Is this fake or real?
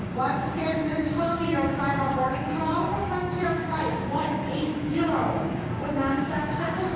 fake